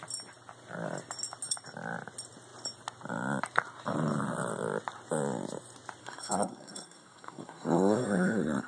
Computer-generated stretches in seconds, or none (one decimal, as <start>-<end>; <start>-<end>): 6.0-8.7

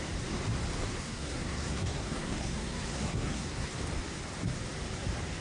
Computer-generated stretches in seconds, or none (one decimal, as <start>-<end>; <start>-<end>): 0.9-3.7

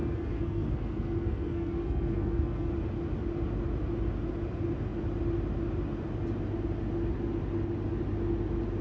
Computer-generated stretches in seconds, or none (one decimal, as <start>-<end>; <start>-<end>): 0.0-2.7

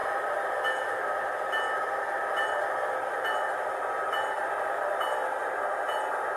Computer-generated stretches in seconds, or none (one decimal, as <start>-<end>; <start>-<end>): none

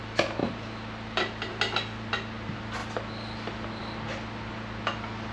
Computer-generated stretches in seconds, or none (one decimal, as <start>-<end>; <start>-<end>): none

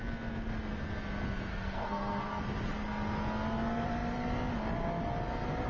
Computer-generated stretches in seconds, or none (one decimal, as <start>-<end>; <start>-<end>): 1.5-2.4

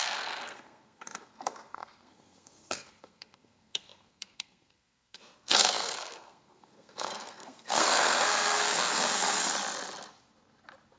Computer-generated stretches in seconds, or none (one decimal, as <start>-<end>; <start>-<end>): 0.0-9.5